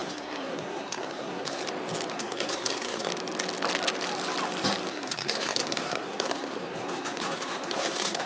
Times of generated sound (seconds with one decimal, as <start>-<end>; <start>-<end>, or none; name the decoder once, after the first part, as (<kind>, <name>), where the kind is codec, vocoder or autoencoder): 0.0-1.6 (codec, SNAC); 2.1-3.1; 4.9-8.3

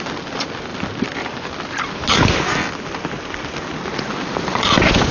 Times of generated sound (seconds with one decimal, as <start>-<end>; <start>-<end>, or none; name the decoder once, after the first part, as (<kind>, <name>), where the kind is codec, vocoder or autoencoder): none

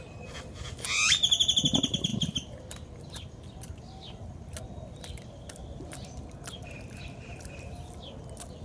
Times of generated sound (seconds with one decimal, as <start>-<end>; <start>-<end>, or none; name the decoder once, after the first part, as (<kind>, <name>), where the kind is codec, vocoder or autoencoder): none

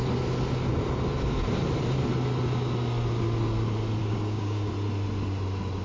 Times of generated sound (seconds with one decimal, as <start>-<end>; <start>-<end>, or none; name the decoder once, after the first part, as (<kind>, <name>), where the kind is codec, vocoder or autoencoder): 4.0-4.7 (codec, DAC)

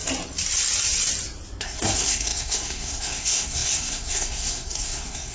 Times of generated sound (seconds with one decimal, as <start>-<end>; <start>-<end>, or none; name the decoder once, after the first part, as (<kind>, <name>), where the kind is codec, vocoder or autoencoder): 1.6-5.3 (codec, SNAC)

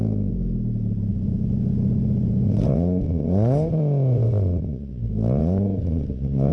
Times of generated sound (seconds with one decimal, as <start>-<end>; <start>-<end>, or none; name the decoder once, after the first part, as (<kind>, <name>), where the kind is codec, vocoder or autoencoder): 1.1-5.0 (vocoder, Vocos); 5.4-6.5

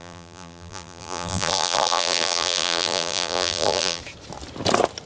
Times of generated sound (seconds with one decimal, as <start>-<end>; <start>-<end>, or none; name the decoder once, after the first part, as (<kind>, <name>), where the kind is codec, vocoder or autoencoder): 0.0-4.0 (vocoder, BigVGAN v2)

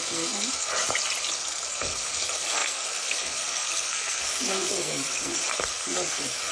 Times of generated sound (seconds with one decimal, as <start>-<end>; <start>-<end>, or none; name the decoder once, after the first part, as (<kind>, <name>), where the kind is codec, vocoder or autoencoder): 0.0-0.7 (codec, SNAC); 1.3-6.5